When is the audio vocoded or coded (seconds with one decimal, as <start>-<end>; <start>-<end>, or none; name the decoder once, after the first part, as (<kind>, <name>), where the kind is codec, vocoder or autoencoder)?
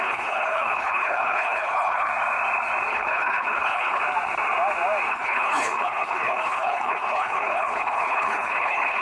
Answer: 0.0-2.1 (codec, HILCodec); 2.9-4.0; 5.1-9.0